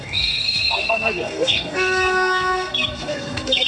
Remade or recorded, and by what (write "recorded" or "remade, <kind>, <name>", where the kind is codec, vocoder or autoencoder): remade, codec, SNAC